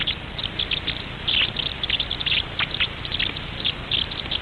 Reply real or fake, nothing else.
real